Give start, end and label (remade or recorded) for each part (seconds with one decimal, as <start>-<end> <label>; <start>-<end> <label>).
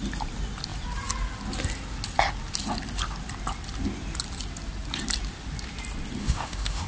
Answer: 0.0-6.2 recorded; 6.2-6.9 remade